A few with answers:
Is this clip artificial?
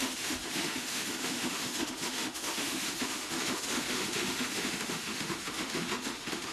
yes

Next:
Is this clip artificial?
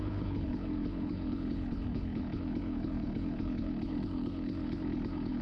yes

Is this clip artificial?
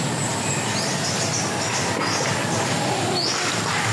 no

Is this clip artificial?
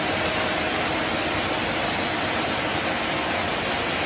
no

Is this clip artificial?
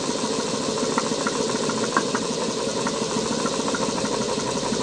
no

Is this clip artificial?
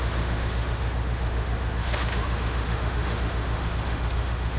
yes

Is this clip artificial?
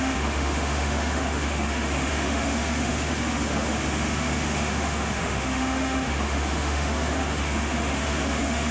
yes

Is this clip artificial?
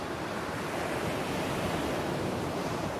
no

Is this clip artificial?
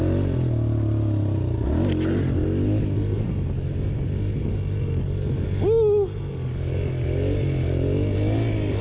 no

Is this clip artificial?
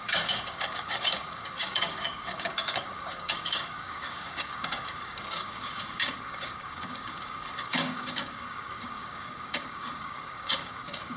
yes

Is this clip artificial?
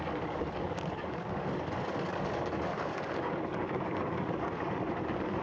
yes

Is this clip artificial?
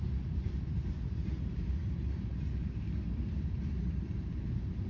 yes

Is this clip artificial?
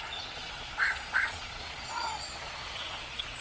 yes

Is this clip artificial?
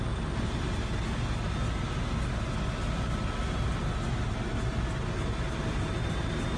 no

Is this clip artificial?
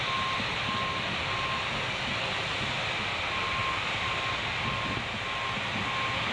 no